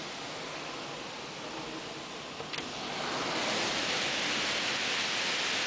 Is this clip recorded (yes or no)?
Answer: yes